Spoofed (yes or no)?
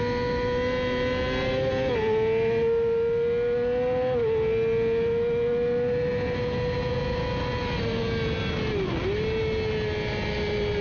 no